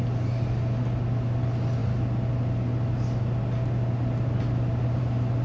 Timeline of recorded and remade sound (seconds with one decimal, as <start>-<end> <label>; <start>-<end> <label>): 0.0-5.4 recorded